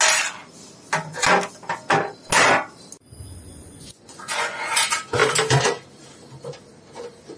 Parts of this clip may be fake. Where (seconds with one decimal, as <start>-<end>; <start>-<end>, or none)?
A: 3.5-4.8